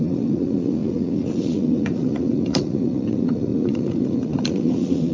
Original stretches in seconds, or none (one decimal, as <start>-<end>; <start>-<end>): none